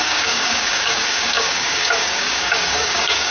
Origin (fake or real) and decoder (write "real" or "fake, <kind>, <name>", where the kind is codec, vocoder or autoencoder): fake, codec, DAC